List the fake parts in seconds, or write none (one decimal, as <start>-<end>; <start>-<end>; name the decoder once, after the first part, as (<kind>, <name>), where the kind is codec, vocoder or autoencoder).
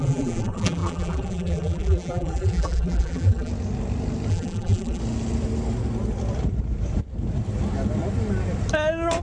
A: 0.0-3.5 (vocoder, BigVGAN v2); 4.3-5.0